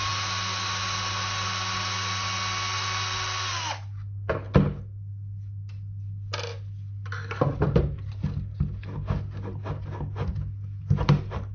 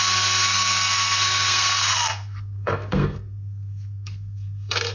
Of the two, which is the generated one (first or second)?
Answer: second